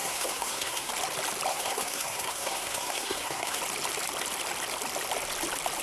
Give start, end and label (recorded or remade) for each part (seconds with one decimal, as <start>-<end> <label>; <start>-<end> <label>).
0.0-0.9 remade; 0.9-1.5 recorded; 1.5-3.6 remade; 3.6-5.8 recorded